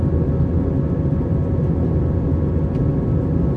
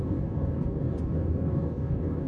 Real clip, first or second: first